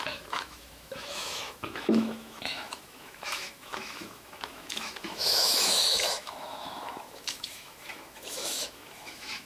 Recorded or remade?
remade